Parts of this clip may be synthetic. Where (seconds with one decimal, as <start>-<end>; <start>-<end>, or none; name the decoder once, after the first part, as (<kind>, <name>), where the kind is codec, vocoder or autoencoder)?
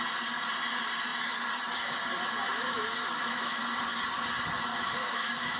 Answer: 2.5-3.6 (autoencoder, DAC-VAE); 4.7-5.6